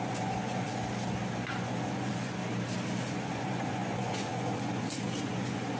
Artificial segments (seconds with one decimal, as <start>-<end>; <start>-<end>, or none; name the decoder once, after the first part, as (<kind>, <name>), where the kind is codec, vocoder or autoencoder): 0.0-0.8 (vocoder, Vocos); 1.6-2.4; 3.0-5.8